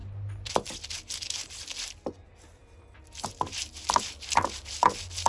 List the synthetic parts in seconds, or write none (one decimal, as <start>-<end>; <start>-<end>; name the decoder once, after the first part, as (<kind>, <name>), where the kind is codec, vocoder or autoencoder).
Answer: none